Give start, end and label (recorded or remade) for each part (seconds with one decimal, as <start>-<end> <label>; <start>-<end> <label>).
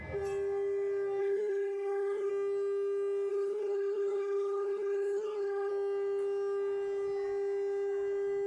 0.0-1.2 recorded; 1.2-2.3 remade; 2.3-3.3 recorded; 3.3-5.7 remade; 5.7-8.5 recorded